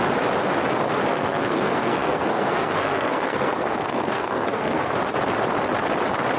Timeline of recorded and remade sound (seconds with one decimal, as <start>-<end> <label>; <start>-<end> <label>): 0.0-1.1 recorded; 1.1-4.9 remade; 4.9-6.4 recorded